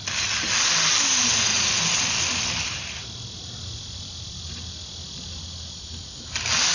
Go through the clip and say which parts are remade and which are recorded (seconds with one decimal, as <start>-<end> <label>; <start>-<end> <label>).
0.0-6.7 recorded